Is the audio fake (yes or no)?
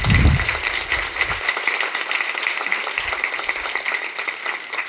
no